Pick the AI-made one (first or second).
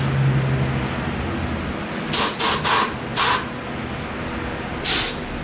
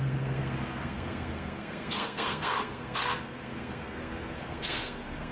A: second